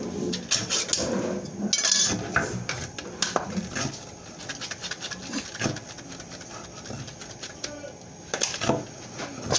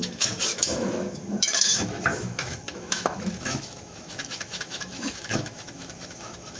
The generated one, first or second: second